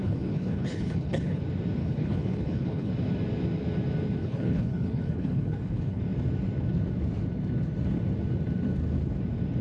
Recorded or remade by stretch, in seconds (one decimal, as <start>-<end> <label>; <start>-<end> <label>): 0.0-1.4 remade; 1.4-1.8 recorded; 1.8-2.9 remade; 2.9-4.2 recorded; 4.2-6.0 remade; 6.0-9.6 recorded